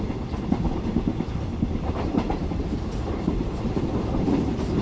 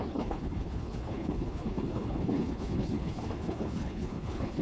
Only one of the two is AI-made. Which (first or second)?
second